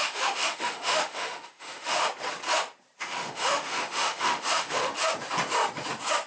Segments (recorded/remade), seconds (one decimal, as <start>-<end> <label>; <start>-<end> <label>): 0.0-2.0 remade; 2.0-3.0 recorded; 3.0-4.9 remade; 4.9-6.3 recorded